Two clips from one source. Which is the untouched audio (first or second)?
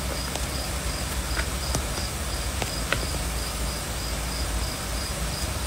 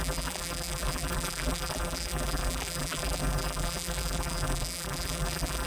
first